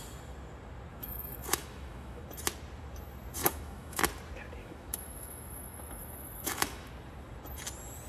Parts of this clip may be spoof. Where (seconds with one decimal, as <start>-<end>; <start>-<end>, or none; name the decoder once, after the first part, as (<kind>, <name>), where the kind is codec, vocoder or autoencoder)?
0.9-2.2 (autoencoder, DAC-VAE); 3.4-4.0; 4.6-6.9